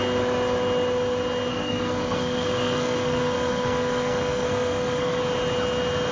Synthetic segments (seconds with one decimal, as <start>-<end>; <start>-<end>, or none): 1.5-5.2